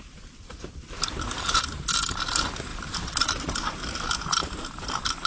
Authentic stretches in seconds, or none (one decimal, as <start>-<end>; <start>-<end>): 0.0-2.7; 3.2-5.3